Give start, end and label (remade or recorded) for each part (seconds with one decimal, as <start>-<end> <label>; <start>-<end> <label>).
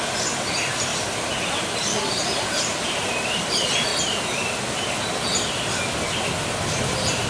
0.0-0.9 remade; 0.9-2.1 recorded; 2.1-3.9 remade; 3.9-7.3 recorded